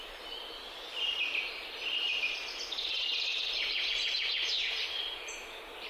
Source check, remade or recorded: recorded